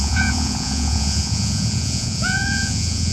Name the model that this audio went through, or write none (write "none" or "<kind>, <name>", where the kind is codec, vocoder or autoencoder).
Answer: vocoder, Vocos